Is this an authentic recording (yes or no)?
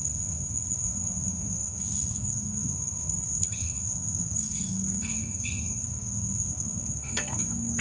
no